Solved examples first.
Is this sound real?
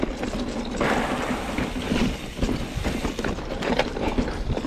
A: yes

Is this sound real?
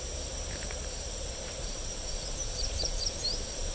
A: no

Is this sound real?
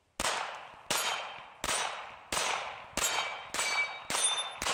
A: yes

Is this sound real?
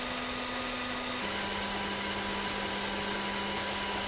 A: yes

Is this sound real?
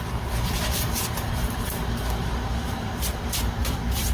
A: no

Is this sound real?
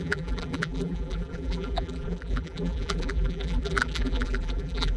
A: no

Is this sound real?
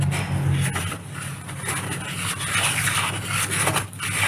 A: yes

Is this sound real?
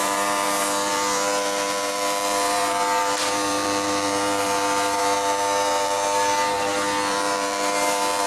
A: no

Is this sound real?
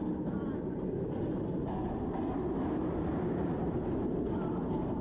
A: yes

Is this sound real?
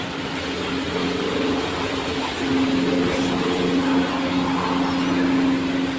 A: yes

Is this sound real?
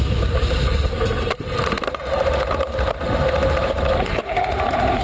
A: no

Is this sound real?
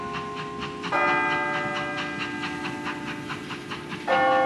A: yes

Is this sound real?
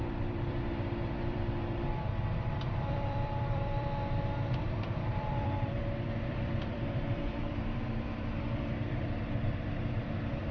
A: no